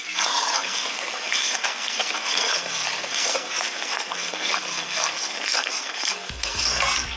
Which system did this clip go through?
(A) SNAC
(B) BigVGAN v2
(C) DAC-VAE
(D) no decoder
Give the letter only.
A